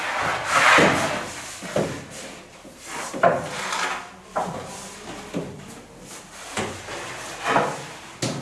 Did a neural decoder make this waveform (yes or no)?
no